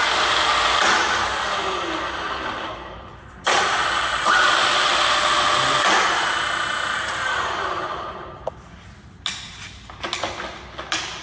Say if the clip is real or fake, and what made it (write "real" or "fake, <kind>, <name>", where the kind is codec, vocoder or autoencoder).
real